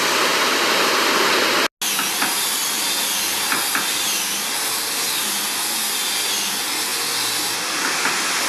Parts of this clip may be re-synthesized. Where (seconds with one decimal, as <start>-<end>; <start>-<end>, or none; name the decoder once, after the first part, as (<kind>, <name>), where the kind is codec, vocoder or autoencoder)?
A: none